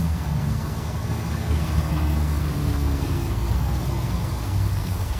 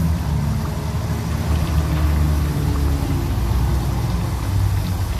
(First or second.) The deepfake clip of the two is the first